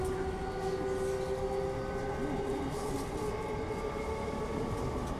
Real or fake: real